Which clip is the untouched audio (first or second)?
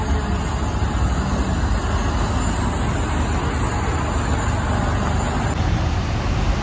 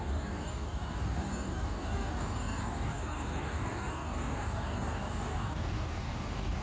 first